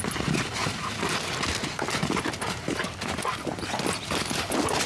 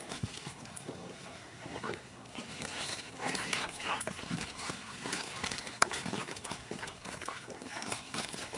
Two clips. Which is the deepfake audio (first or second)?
second